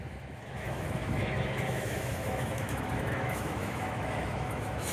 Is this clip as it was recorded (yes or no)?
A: no